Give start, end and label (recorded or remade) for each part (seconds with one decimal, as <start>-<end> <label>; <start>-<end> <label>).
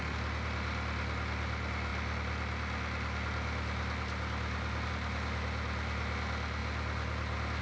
0.0-7.6 recorded